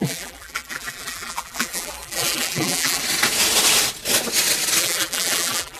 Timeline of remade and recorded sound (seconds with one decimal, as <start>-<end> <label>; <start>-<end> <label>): 0.0-3.0 remade; 3.0-4.8 recorded; 4.8-5.8 remade